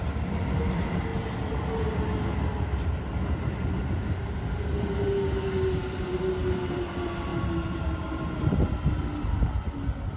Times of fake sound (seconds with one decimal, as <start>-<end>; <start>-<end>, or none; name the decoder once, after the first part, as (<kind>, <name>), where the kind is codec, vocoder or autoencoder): none